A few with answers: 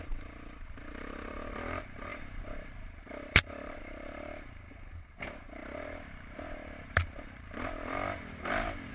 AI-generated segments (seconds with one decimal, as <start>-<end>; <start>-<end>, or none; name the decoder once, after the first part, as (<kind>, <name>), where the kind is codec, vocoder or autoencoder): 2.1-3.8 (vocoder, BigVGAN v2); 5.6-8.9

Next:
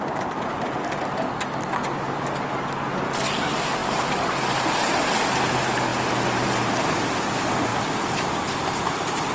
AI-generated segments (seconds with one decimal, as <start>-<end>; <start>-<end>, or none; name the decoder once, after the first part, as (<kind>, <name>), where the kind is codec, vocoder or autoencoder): none

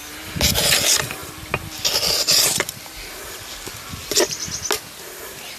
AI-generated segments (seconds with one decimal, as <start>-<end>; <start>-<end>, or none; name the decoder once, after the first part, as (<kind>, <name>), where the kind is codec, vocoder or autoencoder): 1.2-4.6 (vocoder, BigVGAN v2)

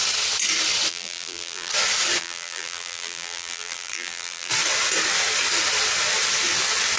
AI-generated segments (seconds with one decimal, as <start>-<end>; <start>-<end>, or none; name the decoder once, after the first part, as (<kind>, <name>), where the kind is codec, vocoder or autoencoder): 0.9-1.7 (vocoder, BigVGAN v2); 2.2-4.5